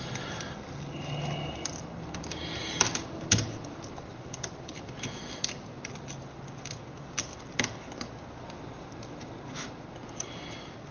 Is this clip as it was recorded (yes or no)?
yes